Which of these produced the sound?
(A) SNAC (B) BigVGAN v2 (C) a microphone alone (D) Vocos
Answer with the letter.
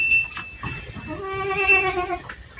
C